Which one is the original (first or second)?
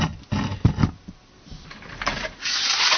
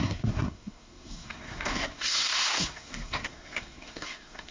first